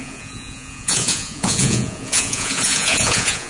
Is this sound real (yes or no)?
no